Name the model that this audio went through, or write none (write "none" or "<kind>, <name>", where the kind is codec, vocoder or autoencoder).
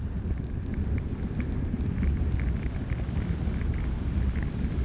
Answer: none